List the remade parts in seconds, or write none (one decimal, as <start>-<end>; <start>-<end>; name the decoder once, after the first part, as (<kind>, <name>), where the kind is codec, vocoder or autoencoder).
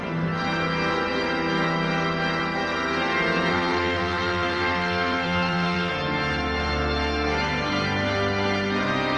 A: 3.5-5.9 (vocoder, BigVGAN v2)